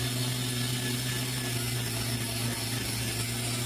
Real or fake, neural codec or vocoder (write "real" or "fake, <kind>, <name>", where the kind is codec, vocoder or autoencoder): real